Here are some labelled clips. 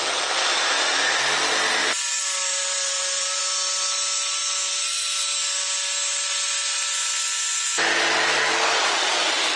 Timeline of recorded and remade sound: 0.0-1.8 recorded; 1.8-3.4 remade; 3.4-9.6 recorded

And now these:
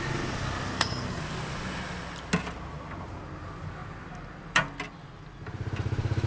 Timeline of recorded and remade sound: 0.0-0.7 recorded; 0.7-1.2 remade; 1.2-6.3 recorded